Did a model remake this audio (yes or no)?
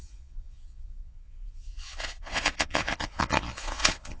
yes